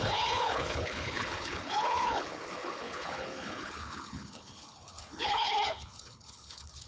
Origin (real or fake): fake